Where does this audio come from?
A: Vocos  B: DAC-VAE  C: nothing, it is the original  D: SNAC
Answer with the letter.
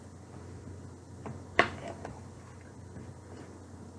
C